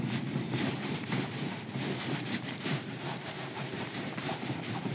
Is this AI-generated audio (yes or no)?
yes